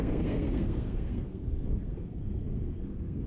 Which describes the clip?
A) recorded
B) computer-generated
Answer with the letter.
B